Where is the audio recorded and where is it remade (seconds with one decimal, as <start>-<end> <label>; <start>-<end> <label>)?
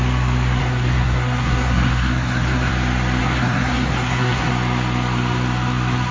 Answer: 0.0-0.6 recorded; 0.6-2.7 remade; 2.7-3.2 recorded; 3.2-4.5 remade; 4.5-6.1 recorded